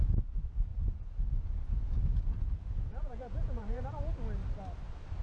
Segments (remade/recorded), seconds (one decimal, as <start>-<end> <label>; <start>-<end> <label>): 0.0-0.7 recorded; 0.7-3.8 remade; 3.8-5.2 recorded